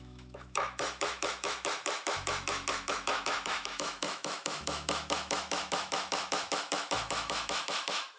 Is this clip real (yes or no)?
no